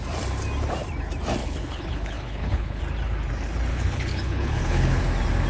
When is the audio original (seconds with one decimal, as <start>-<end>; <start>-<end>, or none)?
0.0-1.4; 2.8-3.7; 5.0-5.5